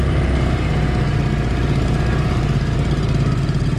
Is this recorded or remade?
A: recorded